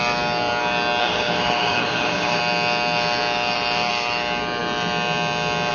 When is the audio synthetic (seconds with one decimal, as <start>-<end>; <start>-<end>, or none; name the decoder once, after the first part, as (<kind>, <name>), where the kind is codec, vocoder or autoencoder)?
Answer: 1.0-2.4 (codec, HILCodec)